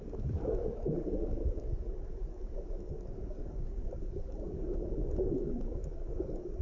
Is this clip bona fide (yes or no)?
no